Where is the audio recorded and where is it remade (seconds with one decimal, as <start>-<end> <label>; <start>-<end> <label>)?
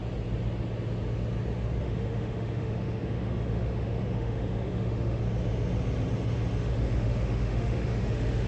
0.0-1.8 recorded; 1.8-5.2 remade; 5.2-6.6 recorded; 6.6-8.5 remade